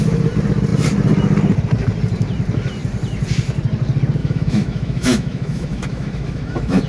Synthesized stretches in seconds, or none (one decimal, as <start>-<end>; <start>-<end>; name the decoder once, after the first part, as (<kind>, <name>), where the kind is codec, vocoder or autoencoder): 4.2-6.9 (autoencoder, DAC-VAE)